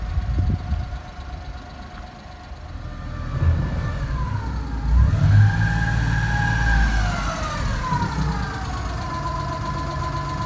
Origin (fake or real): real